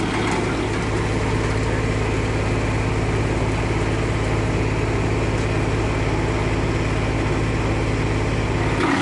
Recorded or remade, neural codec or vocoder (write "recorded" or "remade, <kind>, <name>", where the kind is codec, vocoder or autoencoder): recorded